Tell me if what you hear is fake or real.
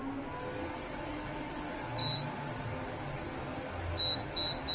real